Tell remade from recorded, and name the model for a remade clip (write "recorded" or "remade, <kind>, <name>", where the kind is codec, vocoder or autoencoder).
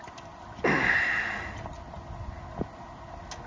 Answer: recorded